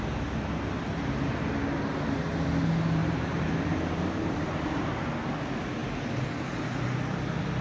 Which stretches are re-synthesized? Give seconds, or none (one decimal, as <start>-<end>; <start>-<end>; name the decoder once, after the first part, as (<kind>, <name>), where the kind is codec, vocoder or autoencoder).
3.0-4.8 (vocoder, BigVGAN v2); 5.8-6.6